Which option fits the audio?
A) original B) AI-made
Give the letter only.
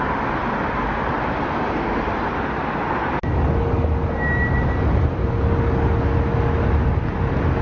A